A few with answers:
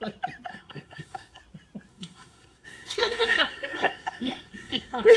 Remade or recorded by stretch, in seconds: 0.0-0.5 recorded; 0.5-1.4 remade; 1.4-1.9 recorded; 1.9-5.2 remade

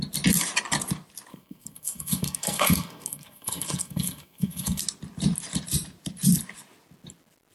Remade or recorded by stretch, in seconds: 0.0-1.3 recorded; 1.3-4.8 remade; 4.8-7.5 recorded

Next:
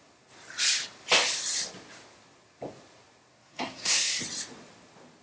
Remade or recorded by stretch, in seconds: 0.0-3.3 recorded; 3.3-4.2 remade; 4.2-5.2 recorded

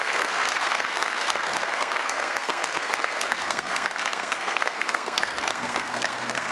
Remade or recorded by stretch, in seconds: 0.0-6.5 remade